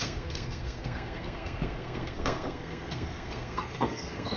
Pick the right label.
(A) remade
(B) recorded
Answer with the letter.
A